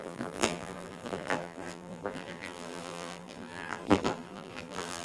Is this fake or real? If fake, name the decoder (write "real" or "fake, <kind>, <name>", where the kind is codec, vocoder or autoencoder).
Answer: fake, vocoder, BigVGAN v2